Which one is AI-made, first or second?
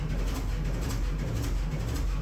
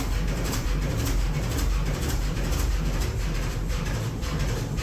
second